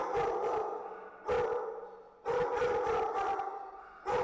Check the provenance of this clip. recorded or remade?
recorded